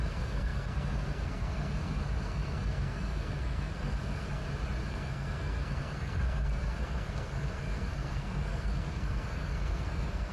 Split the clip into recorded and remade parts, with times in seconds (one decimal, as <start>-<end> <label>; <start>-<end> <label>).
0.0-4.4 remade; 4.4-4.9 recorded; 4.9-10.3 remade